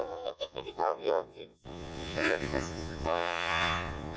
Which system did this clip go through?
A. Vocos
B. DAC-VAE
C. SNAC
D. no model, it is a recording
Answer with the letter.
A